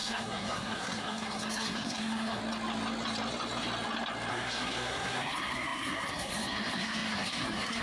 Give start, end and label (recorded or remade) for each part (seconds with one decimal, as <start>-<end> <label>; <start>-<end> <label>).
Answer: 0.0-2.4 remade; 2.4-4.3 recorded; 4.3-7.8 remade